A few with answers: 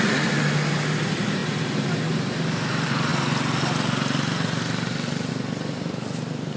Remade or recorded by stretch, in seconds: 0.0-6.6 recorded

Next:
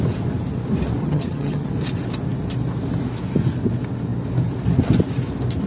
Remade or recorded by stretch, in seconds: 0.0-1.0 recorded; 1.0-1.7 remade; 1.7-5.7 recorded

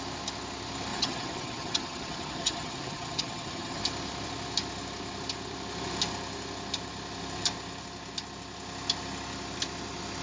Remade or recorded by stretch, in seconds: 0.0-0.9 recorded; 0.9-3.8 remade; 3.8-10.2 recorded

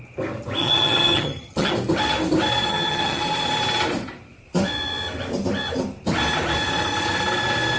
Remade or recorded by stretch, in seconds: 0.0-0.6 recorded; 0.6-1.7 remade; 1.7-2.7 recorded; 2.7-3.2 remade; 3.2-7.8 recorded

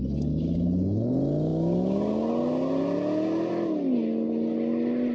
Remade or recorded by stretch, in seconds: 0.0-5.1 recorded